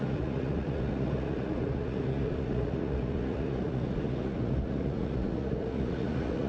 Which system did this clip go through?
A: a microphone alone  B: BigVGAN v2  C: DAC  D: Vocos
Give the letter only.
D